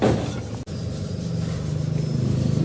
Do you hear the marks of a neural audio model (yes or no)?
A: no